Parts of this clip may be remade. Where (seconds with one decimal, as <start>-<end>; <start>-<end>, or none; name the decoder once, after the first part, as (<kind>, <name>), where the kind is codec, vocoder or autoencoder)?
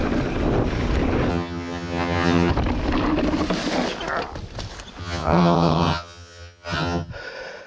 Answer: 1.3-2.5 (vocoder, HiFi-GAN); 5.0-7.1